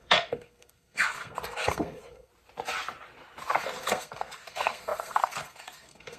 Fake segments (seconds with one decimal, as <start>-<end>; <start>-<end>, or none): 0.0-2.3; 3.6-6.2